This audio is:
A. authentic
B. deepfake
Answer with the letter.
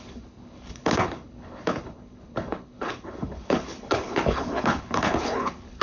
B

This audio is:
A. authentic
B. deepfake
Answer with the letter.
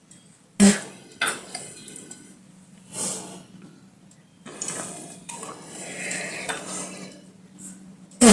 A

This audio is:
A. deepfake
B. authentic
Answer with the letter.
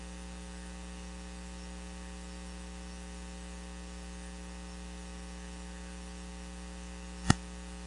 B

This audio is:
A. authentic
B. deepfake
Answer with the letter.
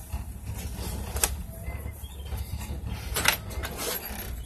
A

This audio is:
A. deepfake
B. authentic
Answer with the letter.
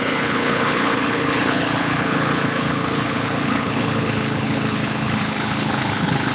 A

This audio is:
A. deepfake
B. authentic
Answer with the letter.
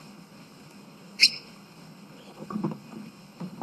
A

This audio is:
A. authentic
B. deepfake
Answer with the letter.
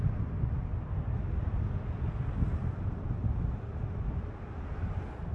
A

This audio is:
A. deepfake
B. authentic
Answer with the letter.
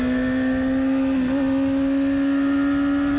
B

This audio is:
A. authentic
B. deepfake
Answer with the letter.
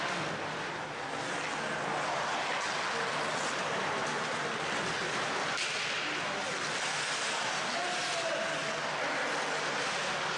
A